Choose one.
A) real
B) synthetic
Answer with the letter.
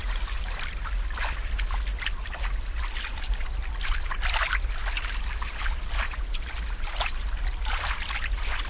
A